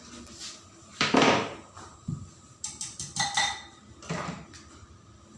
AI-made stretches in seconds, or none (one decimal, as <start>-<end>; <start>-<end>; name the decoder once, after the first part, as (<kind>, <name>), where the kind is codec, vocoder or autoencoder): 0.9-4.1 (vocoder, BigVGAN v2)